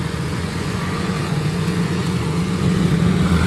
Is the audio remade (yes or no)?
yes